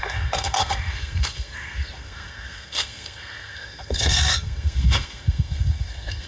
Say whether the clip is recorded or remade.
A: remade